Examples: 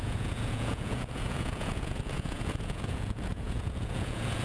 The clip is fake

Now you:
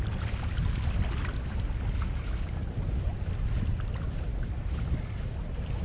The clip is real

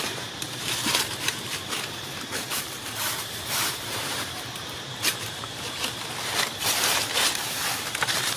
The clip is fake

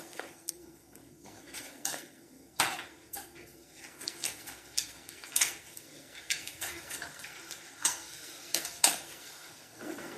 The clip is fake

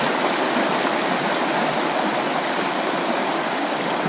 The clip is real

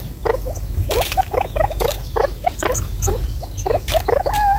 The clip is fake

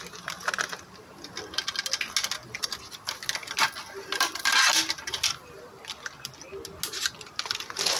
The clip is real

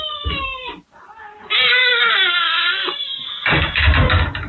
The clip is real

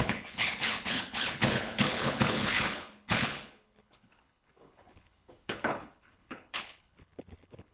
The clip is fake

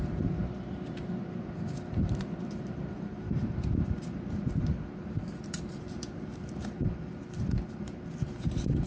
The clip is fake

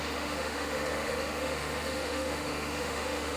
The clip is fake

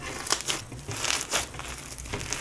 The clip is real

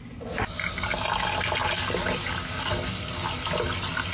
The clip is real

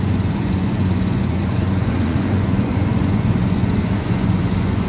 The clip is fake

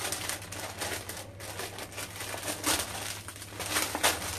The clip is real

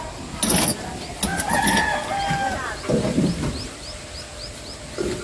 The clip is real